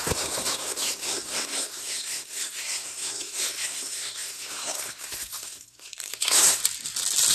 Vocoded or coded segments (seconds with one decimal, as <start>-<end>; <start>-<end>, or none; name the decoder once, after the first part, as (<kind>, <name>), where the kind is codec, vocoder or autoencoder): 0.0-6.6 (codec, SNAC)